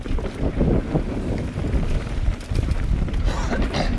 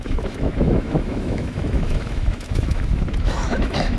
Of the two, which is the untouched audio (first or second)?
first